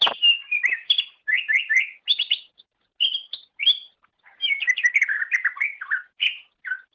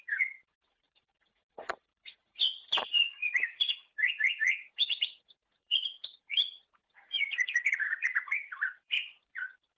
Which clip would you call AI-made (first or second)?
second